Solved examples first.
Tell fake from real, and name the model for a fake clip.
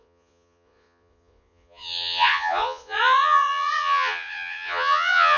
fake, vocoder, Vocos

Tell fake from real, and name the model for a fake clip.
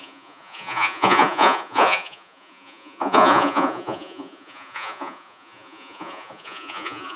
fake, vocoder, Vocos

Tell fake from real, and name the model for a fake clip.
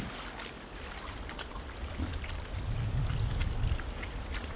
real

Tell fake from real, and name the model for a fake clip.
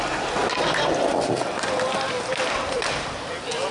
real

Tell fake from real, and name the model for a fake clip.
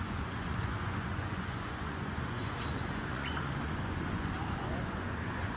fake, vocoder, Vocos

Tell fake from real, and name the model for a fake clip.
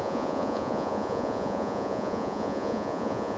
fake, vocoder, Vocos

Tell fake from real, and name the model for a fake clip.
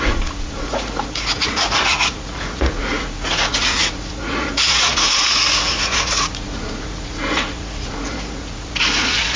fake, vocoder, Vocos